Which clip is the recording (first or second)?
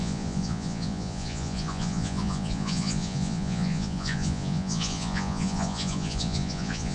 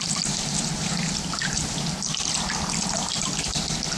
second